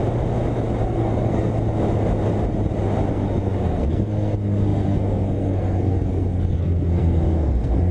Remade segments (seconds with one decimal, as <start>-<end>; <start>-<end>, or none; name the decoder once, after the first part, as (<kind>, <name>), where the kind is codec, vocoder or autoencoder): 0.8-1.5 (codec, SNAC); 3.1-7.9